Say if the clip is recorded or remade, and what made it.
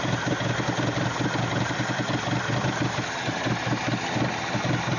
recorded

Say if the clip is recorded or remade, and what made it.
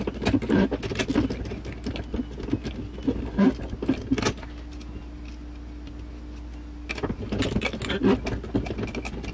recorded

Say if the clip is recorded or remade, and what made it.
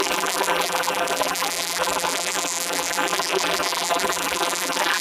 remade, vocoder, BigVGAN v2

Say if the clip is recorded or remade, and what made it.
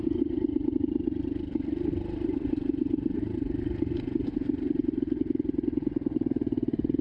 recorded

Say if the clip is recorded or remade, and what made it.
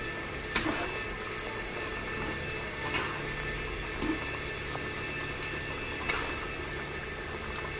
recorded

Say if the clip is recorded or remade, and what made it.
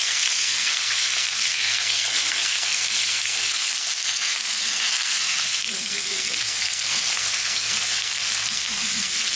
remade, codec, SNAC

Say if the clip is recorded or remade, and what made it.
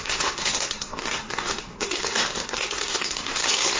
remade, codec, SNAC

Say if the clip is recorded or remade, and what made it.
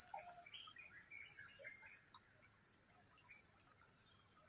recorded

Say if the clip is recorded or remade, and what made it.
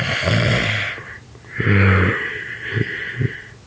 recorded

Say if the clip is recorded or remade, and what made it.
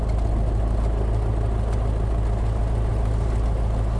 recorded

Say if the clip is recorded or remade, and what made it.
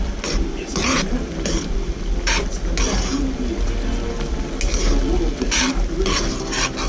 recorded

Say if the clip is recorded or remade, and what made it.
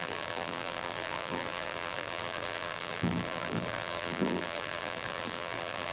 remade, vocoder, BigVGAN v2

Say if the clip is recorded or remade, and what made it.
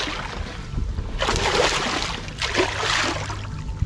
recorded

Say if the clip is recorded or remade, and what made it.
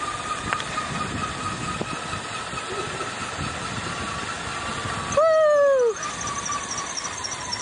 recorded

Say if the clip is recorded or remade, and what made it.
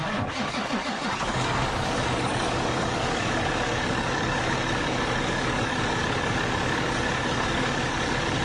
remade, codec, DAC